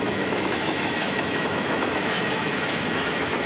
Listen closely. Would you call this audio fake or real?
fake